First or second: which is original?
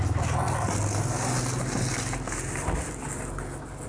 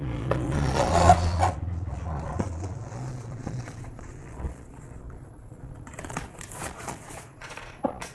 first